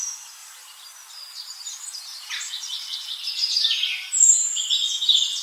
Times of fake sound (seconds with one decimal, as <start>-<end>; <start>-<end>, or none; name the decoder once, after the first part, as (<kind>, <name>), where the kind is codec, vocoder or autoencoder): 0.4-3.6 (vocoder, BigVGAN v2)